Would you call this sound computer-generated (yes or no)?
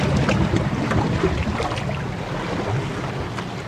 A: no